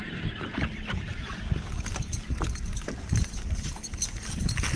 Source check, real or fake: fake